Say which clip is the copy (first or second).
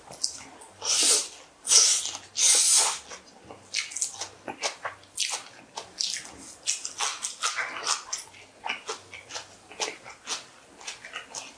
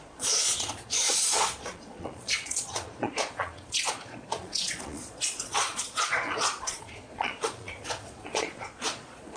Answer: second